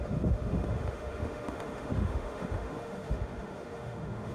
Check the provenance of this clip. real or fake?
fake